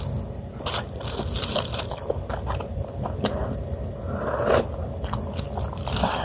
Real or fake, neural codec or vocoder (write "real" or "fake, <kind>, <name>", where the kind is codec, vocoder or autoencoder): real